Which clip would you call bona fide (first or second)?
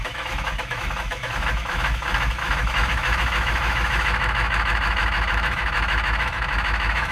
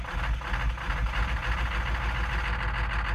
second